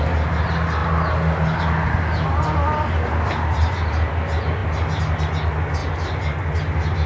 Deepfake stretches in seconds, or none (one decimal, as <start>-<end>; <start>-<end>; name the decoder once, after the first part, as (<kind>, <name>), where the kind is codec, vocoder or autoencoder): none